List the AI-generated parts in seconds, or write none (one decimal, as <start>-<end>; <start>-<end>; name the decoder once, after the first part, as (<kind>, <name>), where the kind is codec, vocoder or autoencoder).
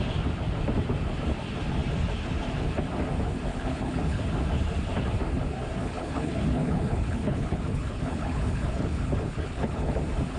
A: 3.5-4.2 (codec, HILCodec); 5.8-10.0